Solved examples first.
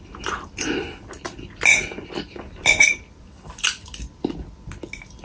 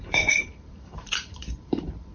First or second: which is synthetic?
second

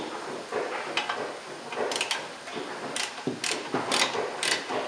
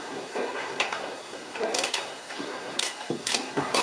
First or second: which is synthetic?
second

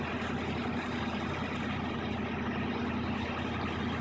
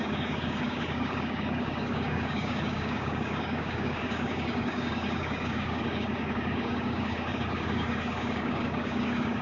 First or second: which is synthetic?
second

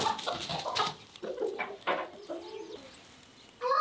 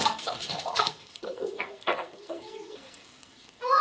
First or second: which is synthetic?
second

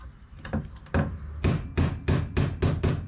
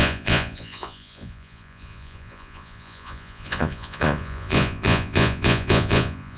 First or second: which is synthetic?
second